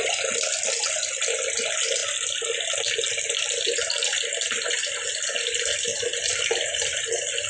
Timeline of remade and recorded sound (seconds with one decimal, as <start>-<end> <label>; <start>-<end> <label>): 0.0-7.5 recorded